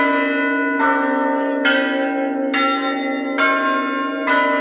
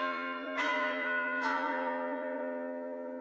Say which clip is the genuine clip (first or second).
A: first